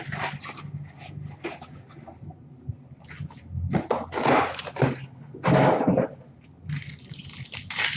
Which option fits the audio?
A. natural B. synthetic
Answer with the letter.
A